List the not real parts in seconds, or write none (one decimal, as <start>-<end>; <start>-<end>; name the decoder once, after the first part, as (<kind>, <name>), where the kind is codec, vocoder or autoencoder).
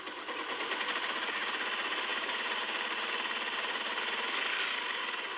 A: 2.1-3.1 (vocoder, BigVGAN v2)